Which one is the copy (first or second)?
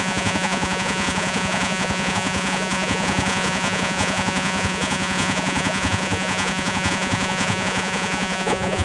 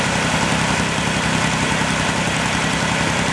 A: first